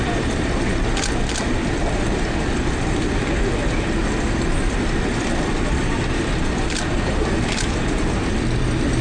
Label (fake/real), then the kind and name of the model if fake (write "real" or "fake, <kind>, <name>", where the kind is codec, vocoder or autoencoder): real